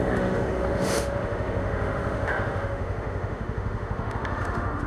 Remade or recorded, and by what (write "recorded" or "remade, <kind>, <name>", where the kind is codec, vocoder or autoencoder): remade, autoencoder, DAC-VAE